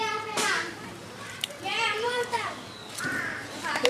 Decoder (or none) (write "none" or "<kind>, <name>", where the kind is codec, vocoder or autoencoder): vocoder, BigVGAN v2